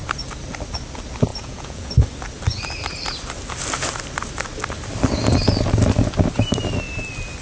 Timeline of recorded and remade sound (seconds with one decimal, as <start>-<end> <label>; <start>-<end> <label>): 0.0-1.3 recorded; 1.3-1.9 remade; 1.9-7.4 recorded